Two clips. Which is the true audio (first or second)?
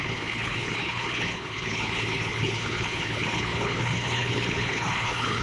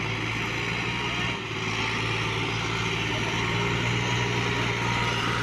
second